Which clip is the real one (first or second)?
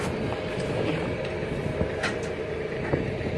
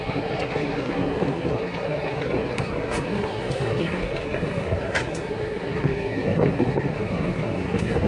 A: first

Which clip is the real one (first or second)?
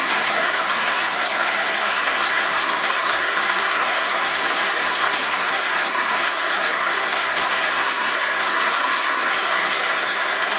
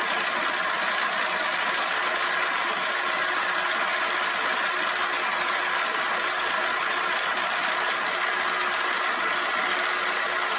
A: second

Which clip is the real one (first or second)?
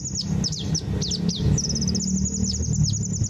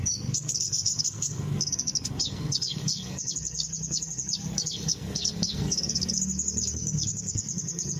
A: first